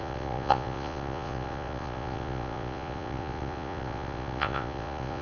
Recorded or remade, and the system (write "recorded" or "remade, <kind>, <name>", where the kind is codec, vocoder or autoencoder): remade, vocoder, Vocos